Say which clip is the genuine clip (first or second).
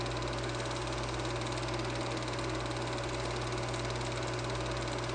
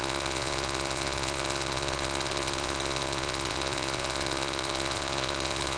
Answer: first